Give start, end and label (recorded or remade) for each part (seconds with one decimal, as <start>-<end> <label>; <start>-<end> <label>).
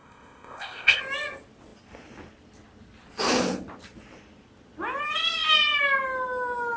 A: 0.0-1.0 remade; 1.0-6.8 recorded